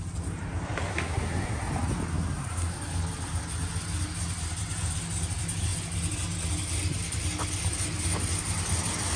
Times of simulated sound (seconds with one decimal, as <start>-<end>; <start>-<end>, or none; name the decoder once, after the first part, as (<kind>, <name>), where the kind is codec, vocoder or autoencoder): 0.9-1.6 (codec, SNAC); 2.1-2.7